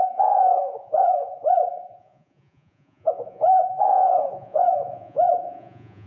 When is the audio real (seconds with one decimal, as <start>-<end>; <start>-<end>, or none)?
none